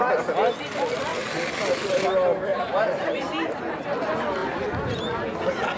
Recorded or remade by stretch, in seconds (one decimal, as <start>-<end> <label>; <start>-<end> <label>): 0.0-1.1 recorded; 1.1-1.6 remade; 1.6-2.5 recorded; 2.5-3.6 remade; 3.6-5.8 recorded